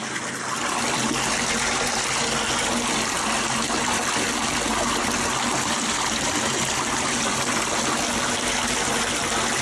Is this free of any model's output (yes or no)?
yes